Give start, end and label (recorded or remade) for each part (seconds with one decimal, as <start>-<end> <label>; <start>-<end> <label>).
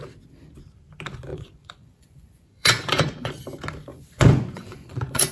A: 0.0-1.3 recorded; 1.3-3.3 remade; 3.3-3.9 recorded; 3.9-5.3 remade